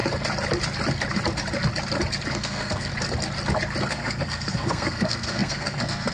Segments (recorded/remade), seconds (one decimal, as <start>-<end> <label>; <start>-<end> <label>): 0.0-2.3 recorded; 2.3-2.9 remade; 2.9-3.9 recorded; 3.9-6.1 remade